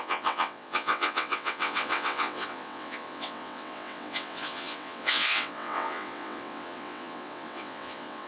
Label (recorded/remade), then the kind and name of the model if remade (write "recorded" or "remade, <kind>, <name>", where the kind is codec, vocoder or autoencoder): remade, vocoder, WaveNeXt